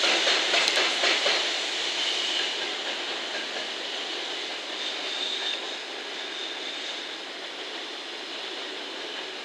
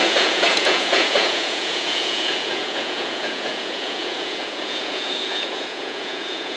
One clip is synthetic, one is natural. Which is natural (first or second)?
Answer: first